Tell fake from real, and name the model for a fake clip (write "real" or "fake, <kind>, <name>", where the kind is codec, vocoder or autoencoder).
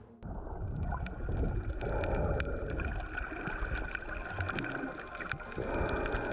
real